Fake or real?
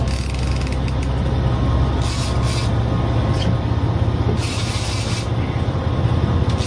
real